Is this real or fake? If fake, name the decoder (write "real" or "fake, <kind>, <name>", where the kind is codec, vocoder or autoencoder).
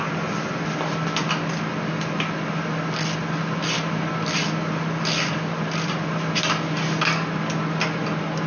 real